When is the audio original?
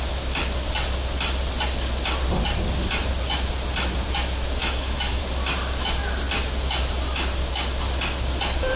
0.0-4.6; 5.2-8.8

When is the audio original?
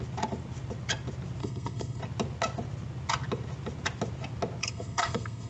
0.0-1.4; 2.0-4.6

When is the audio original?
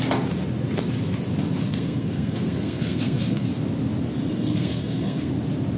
0.0-1.6; 3.5-4.3; 5.3-5.8